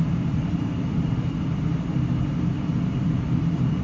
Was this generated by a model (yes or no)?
yes